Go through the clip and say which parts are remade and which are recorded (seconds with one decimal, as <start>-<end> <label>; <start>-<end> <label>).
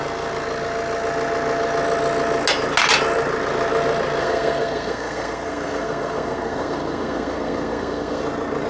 0.0-4.2 recorded; 4.2-8.2 remade; 8.2-8.7 recorded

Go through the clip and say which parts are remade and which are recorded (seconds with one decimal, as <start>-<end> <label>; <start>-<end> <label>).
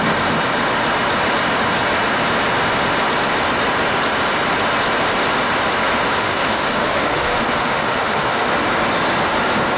0.0-6.2 recorded; 6.2-8.5 remade; 8.5-9.8 recorded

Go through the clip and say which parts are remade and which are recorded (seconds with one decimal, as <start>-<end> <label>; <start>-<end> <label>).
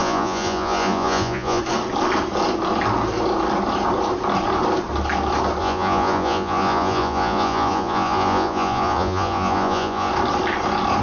0.0-1.6 remade; 1.6-5.6 recorded; 5.6-10.1 remade; 10.1-11.0 recorded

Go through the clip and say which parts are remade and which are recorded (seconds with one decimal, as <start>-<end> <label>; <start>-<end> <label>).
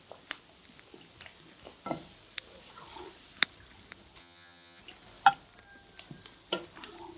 0.0-4.2 recorded; 4.2-4.8 remade; 4.8-7.2 recorded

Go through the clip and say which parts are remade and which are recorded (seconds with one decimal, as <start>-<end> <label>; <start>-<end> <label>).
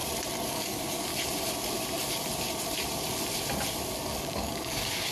0.0-0.5 recorded; 0.5-1.1 remade; 1.1-4.2 recorded; 4.2-5.1 remade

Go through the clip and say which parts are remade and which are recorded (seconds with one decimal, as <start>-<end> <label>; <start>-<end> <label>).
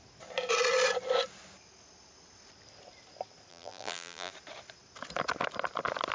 0.0-3.5 recorded; 3.5-4.3 remade; 4.3-6.1 recorded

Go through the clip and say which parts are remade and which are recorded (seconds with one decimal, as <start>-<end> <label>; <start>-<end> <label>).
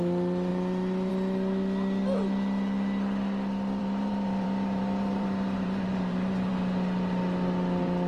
0.0-3.8 recorded; 3.8-6.5 remade; 6.5-8.1 recorded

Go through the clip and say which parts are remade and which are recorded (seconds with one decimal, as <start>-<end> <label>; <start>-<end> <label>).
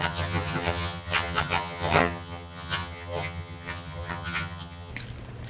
0.0-4.9 remade; 4.9-5.5 recorded